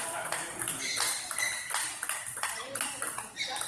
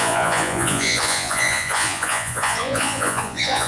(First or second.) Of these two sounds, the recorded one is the first